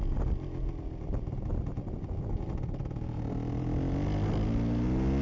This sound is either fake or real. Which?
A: real